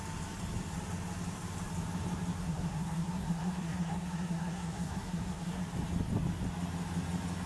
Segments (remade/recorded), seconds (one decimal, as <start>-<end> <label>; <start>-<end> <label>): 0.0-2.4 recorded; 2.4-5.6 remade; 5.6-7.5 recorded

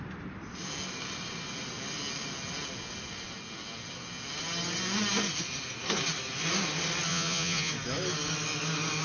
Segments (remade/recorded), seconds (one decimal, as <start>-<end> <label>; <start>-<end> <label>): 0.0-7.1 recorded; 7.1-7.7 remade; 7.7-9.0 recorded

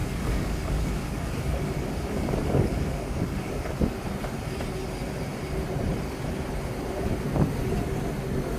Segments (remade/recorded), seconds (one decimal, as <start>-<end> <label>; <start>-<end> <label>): 0.0-3.9 remade; 3.9-8.6 recorded

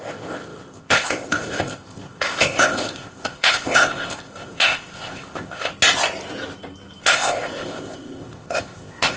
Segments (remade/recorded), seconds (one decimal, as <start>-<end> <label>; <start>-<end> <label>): 0.0-5.7 remade; 5.7-7.0 recorded; 7.0-9.2 remade